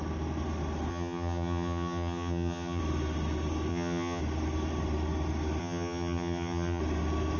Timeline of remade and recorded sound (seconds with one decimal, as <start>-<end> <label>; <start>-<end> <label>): 0.0-0.9 recorded; 0.9-2.8 remade; 2.8-3.7 recorded; 3.7-4.2 remade; 4.2-5.6 recorded; 5.6-6.8 remade; 6.8-7.4 recorded